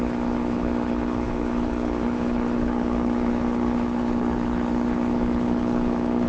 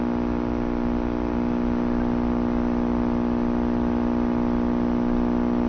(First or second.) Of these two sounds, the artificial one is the first